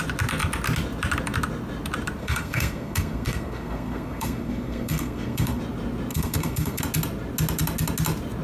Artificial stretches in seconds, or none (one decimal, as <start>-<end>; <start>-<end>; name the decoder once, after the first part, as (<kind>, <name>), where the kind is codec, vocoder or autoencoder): 2.2-5.6 (codec, SNAC); 6.1-6.8